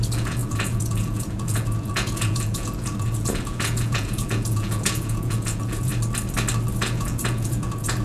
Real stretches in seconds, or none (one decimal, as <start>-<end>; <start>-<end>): 5.9-6.8